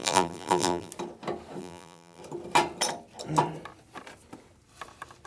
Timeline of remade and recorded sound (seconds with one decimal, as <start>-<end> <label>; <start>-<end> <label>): 0.0-0.9 remade; 0.9-1.6 recorded; 1.6-2.2 remade; 2.2-5.3 recorded